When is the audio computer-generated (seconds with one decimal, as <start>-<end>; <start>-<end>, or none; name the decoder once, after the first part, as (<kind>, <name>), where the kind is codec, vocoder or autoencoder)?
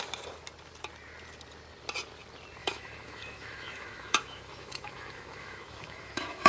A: 2.6-6.5 (autoencoder, DAC-VAE)